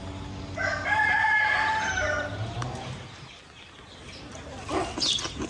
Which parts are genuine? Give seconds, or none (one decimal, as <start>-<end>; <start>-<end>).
0.0-0.7; 3.4-5.5